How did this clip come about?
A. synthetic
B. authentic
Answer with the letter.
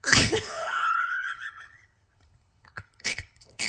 A